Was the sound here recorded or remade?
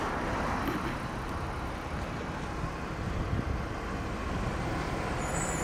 recorded